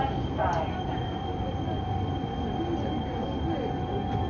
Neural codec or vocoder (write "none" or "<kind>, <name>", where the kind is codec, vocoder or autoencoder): none